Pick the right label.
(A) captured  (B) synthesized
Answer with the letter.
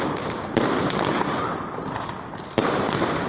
A